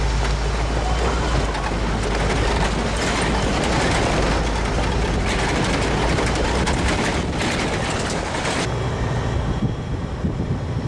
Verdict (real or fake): real